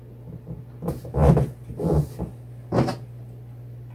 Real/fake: real